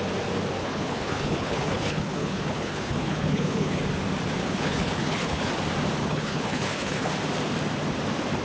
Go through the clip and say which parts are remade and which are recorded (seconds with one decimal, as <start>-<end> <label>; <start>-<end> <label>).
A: 0.0-0.6 recorded; 0.6-3.8 remade; 3.8-4.4 recorded; 4.4-5.5 remade; 5.5-6.0 recorded; 6.0-7.1 remade; 7.1-8.4 recorded